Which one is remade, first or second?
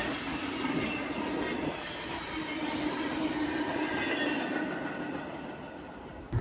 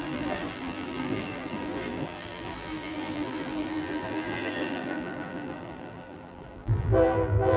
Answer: second